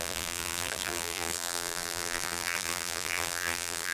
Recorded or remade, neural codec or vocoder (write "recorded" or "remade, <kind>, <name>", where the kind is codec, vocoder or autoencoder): remade, vocoder, BigVGAN v2